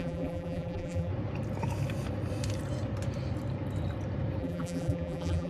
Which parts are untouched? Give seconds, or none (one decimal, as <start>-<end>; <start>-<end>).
1.1-4.4